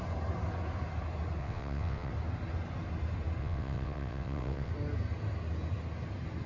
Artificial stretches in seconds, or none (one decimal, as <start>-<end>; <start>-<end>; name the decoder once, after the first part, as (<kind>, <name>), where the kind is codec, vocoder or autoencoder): 1.4-2.1 (vocoder, WaveNeXt); 3.4-4.7